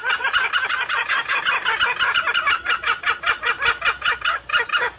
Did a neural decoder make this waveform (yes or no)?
no